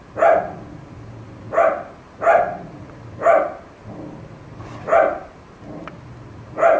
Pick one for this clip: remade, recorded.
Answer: recorded